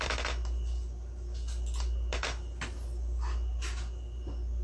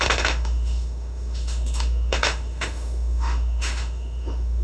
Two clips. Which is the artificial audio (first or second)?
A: second